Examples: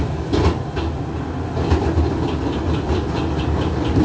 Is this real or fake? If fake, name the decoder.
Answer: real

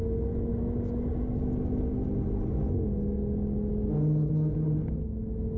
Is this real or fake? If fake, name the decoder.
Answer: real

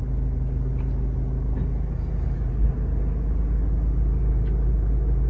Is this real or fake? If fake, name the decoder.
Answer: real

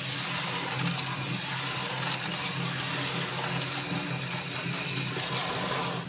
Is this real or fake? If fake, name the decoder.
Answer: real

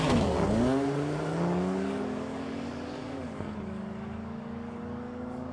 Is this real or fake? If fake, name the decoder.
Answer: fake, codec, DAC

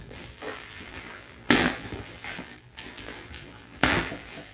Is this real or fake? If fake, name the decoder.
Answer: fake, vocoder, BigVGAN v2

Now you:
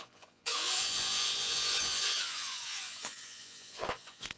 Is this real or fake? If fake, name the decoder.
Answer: fake, vocoder, Vocos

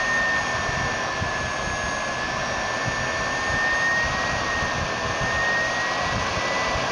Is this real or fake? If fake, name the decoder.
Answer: real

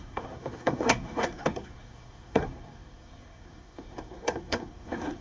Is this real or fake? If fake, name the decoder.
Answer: fake, codec, SNAC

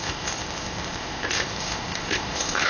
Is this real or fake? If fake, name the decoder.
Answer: fake, codec, ZipCodec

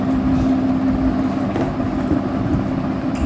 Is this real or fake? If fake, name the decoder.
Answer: real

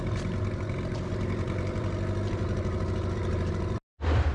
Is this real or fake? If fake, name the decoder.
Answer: real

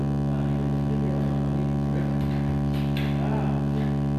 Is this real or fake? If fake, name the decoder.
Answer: real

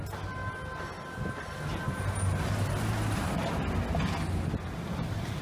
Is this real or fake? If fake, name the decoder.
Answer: real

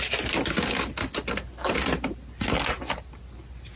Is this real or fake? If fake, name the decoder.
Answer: real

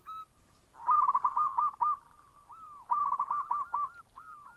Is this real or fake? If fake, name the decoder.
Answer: fake, vocoder, BigVGAN v2